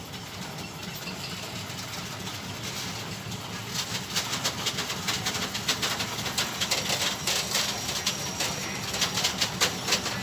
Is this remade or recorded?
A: recorded